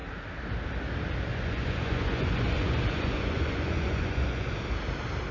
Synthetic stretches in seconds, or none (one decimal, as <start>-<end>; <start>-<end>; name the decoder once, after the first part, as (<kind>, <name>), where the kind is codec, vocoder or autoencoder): 1.3-4.5 (vocoder, Vocos)